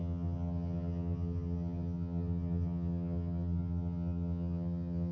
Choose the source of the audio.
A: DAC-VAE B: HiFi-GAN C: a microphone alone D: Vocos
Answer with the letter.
B